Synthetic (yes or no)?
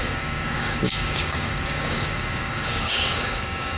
yes